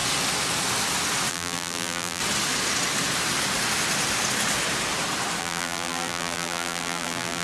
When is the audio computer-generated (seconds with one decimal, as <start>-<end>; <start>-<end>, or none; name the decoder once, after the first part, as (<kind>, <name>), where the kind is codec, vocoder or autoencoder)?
1.3-2.2 (vocoder, BigVGAN v2); 5.4-7.4